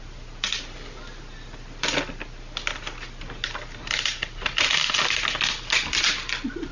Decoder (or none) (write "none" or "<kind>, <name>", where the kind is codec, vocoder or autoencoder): none